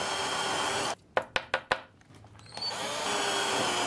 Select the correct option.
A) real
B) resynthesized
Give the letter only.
A